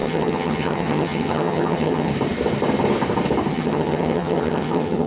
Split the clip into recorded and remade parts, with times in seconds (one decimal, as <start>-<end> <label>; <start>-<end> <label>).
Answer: 0.0-2.1 remade; 2.1-3.5 recorded; 3.5-5.1 remade